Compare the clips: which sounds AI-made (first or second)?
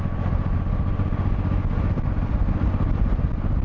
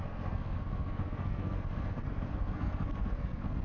second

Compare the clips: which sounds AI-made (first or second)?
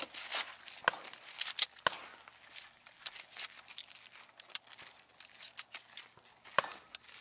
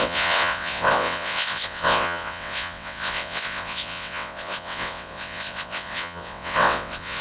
second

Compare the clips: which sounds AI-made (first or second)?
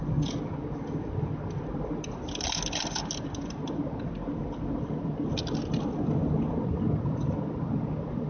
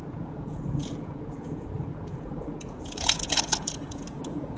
second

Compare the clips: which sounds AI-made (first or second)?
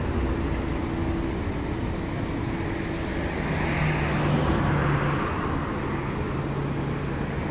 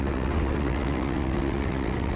second